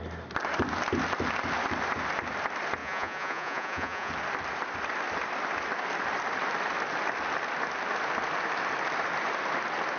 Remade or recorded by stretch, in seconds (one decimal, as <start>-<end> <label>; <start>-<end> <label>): 0.0-2.8 recorded; 2.8-4.1 remade; 4.1-10.0 recorded